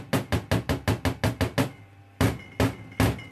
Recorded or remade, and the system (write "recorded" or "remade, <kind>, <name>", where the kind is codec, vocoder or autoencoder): recorded